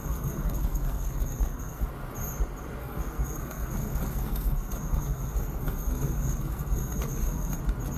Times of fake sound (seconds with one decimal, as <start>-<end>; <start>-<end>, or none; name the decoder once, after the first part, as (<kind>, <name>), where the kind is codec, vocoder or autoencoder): 0.0-1.9 (codec, SNAC); 2.8-7.6